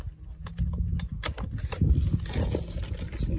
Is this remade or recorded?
recorded